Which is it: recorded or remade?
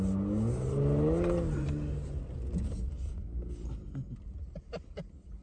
recorded